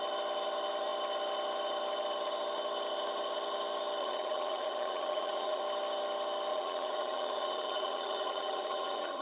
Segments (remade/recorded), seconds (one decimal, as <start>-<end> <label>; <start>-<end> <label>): 0.0-4.0 recorded; 4.0-5.6 remade; 5.6-6.5 recorded; 6.5-9.2 remade